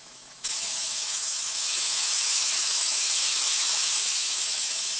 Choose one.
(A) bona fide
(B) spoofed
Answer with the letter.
B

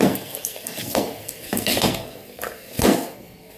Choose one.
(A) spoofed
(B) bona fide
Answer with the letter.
A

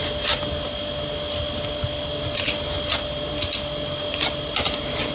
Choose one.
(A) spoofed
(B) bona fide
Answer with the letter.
B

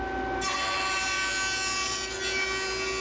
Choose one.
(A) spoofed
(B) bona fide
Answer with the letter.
B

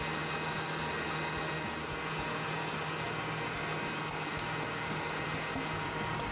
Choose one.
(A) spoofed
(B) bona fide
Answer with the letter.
B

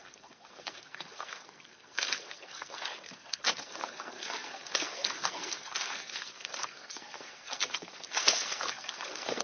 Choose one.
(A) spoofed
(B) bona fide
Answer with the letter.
A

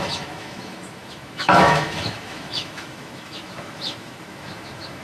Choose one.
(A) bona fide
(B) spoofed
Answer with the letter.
B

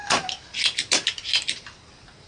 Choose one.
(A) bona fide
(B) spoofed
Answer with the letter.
A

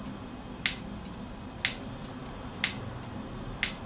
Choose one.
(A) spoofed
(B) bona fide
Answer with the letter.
B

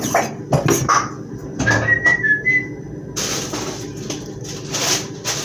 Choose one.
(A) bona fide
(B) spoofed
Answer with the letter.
A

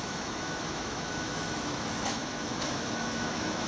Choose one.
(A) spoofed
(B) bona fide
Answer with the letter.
A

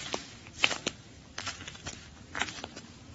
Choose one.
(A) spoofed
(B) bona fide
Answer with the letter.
B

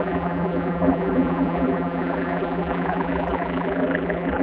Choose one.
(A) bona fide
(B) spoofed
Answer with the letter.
B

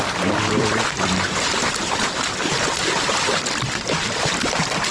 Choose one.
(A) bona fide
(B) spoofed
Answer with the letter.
B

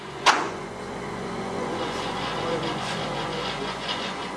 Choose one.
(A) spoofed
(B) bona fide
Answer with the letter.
A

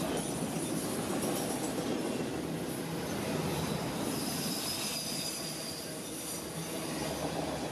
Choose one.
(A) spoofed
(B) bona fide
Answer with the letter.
B